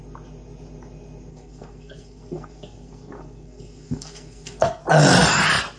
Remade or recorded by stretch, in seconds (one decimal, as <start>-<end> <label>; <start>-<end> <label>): 0.0-1.3 recorded; 1.3-4.8 remade; 4.8-5.8 recorded